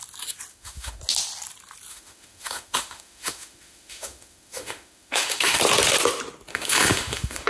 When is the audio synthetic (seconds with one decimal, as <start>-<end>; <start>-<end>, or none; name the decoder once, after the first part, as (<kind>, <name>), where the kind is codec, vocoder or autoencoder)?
0.5-1.0 (autoencoder, DAC-VAE); 1.9-5.6; 6.5-7.5